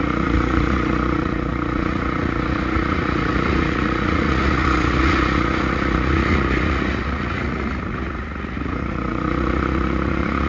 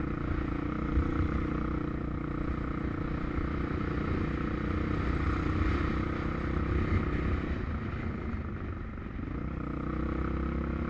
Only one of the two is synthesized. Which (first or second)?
first